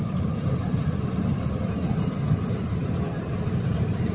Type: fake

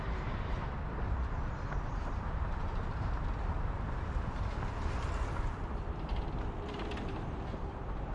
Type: fake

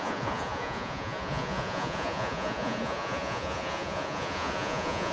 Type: fake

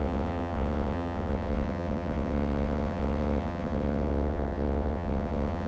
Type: fake